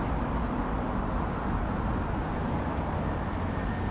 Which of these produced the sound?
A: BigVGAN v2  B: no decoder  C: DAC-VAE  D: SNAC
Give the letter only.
B